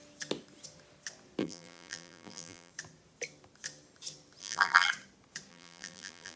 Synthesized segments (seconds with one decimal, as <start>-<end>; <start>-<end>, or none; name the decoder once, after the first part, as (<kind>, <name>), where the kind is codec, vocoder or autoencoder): 1.4-2.7 (vocoder, BigVGAN v2); 4.4-4.9; 5.5-6.4